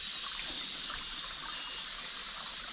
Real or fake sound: real